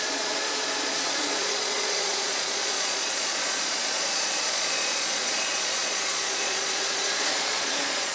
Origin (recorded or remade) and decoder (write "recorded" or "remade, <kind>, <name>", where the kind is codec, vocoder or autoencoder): remade, vocoder, Vocos